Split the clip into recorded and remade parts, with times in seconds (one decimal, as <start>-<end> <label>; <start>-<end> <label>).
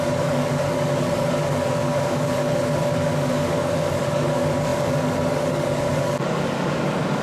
0.0-7.2 remade